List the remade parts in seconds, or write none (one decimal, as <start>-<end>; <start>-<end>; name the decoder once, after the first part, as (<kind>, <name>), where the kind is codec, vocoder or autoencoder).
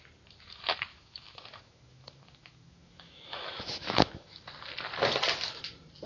0.9-4.4 (autoencoder, DAC-VAE)